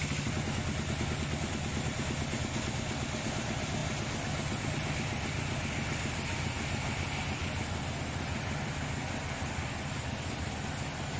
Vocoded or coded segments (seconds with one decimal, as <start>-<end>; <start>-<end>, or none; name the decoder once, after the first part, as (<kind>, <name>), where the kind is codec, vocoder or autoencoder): none